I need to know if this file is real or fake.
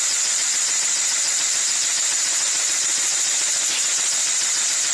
fake